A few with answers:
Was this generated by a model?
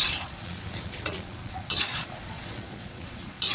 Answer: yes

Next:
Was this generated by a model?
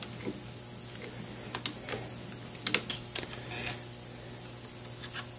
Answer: no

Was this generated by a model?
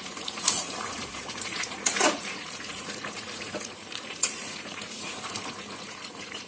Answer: yes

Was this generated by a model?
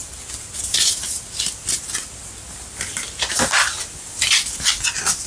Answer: no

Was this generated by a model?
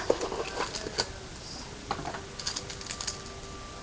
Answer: no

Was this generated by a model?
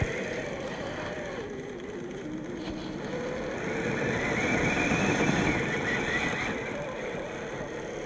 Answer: no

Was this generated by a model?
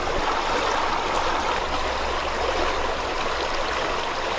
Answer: no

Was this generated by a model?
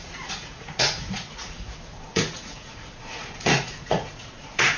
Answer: yes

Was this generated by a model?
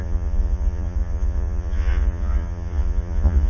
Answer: yes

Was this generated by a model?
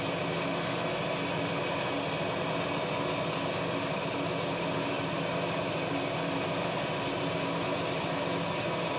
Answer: no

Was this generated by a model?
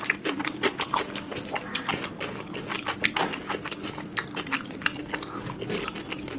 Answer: no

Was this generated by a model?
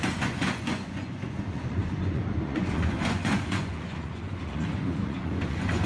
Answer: yes